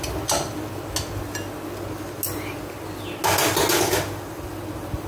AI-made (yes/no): no